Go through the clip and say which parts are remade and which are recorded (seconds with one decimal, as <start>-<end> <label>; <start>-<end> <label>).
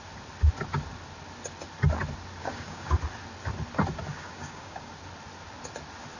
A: 0.0-2.4 recorded; 2.4-2.9 remade; 2.9-4.1 recorded; 4.1-4.9 remade; 4.9-6.2 recorded